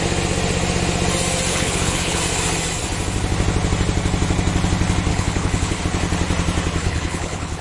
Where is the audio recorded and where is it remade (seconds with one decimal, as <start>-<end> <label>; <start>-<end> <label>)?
0.0-1.5 recorded; 1.5-2.2 remade; 2.2-5.1 recorded; 5.1-5.8 remade; 5.8-6.8 recorded; 6.8-7.6 remade